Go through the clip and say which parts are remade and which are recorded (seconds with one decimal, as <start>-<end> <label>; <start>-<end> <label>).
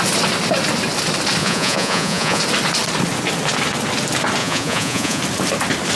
0.0-1.4 recorded; 1.4-2.4 remade; 2.4-4.4 recorded; 4.4-5.2 remade; 5.2-5.9 recorded